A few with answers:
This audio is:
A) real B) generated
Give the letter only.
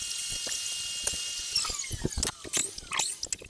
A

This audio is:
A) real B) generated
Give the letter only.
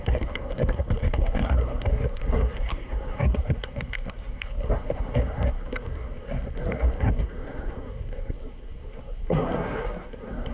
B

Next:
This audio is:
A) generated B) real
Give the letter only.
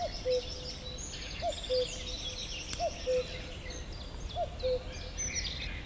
B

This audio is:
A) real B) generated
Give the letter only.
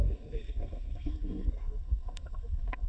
B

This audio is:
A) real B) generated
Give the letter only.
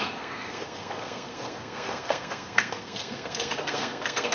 B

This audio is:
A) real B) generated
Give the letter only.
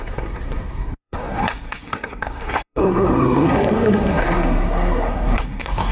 B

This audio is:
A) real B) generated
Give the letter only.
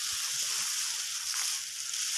A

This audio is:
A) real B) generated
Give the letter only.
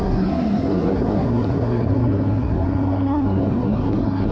B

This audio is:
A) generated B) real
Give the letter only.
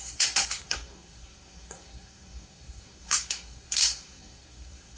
A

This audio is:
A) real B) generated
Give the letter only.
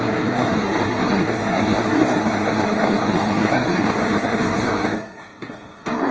B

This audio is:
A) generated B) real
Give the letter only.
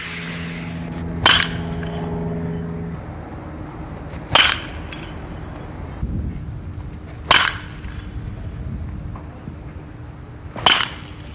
B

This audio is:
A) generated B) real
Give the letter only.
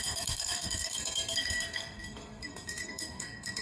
A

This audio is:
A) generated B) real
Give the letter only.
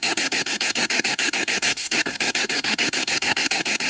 A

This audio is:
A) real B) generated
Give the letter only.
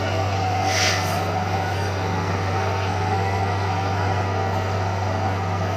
B